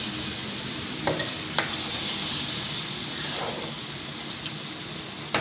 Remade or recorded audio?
recorded